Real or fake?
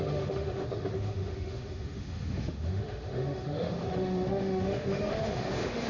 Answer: fake